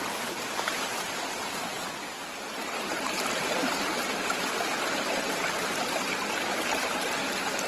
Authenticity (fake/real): real